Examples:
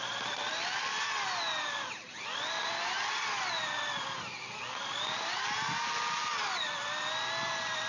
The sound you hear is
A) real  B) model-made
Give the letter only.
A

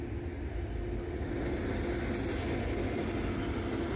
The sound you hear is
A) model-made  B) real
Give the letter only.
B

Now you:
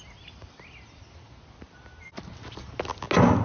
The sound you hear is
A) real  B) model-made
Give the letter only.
A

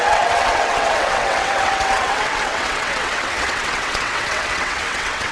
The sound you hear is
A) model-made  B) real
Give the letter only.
A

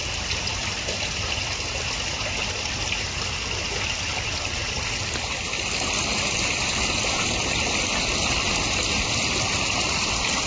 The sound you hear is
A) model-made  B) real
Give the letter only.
A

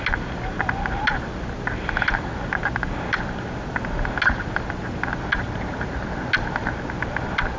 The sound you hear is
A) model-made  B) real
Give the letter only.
B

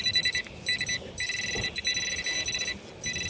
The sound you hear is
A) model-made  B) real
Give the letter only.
B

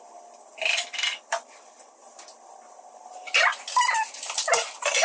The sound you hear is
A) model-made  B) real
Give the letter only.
B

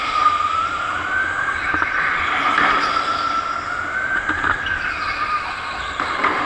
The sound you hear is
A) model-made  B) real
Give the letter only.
B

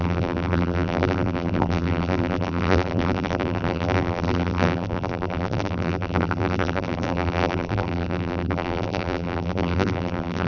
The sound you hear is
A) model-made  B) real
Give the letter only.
A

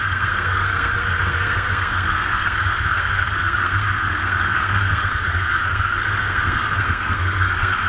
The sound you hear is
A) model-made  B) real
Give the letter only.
A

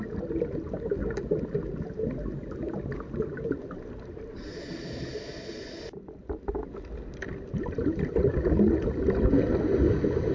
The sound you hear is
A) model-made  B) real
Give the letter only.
B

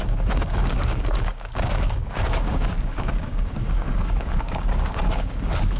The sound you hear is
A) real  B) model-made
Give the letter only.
B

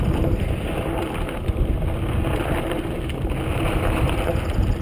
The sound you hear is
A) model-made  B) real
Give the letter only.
B